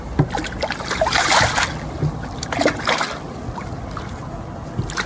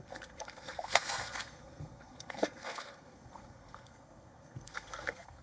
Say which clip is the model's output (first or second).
second